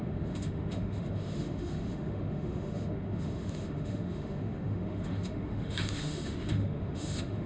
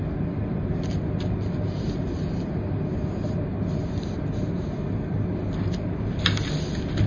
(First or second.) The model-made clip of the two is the first